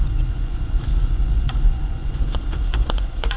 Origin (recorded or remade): remade